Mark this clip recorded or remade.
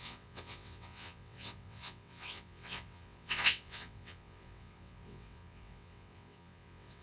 remade